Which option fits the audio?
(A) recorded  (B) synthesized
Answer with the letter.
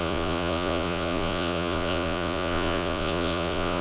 B